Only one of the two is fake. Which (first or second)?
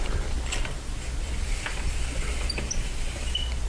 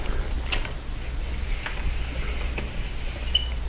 first